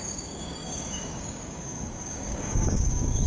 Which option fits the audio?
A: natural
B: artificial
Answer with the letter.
B